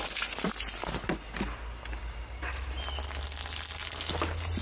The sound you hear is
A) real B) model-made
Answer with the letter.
A